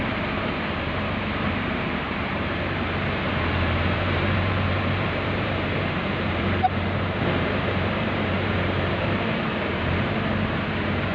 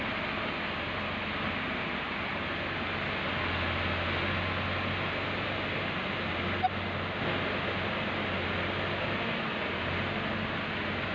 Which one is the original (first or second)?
second